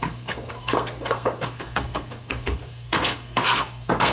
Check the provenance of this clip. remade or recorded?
remade